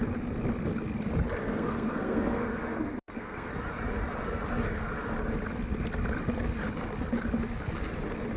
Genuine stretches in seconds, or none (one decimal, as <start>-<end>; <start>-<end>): 0.0-1.4; 3.5-8.4